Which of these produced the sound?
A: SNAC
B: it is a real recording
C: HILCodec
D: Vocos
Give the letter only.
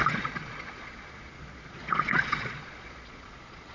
D